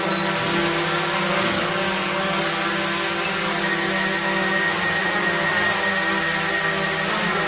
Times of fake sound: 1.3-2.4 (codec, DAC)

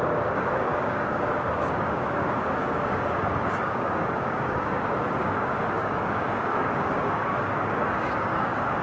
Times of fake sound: 0.0-8.8 (codec, DAC)